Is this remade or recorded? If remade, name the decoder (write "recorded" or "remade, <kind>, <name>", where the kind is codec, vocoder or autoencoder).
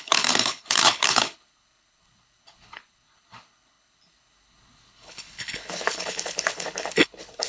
remade, codec, HILCodec